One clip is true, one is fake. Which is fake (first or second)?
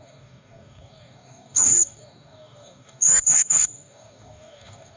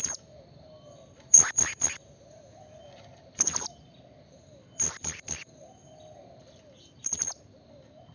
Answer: first